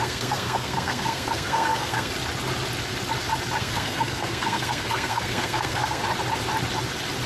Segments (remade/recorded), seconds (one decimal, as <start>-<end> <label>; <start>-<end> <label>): 0.0-2.1 remade; 2.1-3.6 recorded; 3.6-6.0 remade; 6.0-7.3 recorded